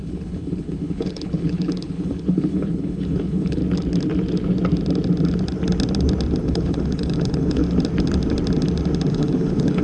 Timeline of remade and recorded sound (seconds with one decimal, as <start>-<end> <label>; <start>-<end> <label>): 0.0-3.6 remade; 3.6-6.4 recorded; 6.4-7.6 remade; 7.6-9.1 recorded; 9.1-9.8 remade